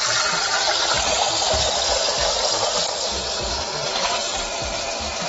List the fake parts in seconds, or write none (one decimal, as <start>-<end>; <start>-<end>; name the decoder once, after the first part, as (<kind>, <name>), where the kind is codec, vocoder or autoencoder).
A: none